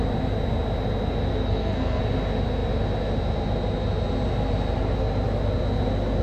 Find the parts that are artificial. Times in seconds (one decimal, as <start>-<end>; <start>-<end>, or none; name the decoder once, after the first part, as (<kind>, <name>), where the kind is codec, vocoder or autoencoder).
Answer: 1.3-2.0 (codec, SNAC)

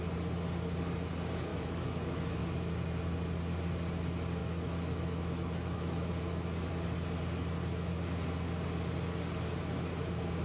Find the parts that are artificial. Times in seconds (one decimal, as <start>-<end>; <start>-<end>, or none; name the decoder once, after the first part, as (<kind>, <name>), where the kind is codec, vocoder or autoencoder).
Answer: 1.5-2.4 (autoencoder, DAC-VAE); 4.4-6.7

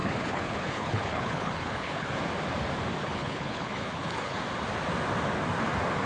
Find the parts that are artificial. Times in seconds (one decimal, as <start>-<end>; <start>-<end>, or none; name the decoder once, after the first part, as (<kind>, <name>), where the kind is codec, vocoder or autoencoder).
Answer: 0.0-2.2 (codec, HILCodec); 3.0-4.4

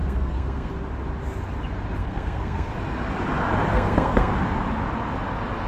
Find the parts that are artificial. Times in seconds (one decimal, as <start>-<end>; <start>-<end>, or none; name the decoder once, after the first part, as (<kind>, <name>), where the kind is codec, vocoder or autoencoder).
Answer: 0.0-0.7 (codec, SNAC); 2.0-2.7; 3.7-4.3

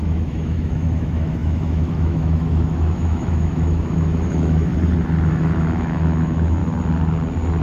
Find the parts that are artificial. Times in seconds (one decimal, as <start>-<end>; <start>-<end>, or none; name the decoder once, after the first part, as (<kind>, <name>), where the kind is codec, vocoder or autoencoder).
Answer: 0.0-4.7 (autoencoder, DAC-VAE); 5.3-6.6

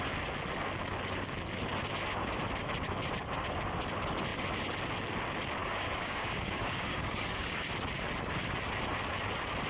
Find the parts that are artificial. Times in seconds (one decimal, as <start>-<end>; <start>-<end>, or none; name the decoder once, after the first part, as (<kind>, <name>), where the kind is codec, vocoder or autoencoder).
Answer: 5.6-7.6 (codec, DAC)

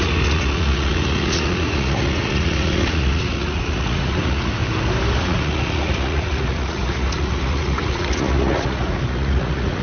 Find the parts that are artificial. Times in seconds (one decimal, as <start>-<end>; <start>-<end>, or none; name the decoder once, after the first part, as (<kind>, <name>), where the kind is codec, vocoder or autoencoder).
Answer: 0.0-4.6 (vocoder, Vocos); 5.2-9.8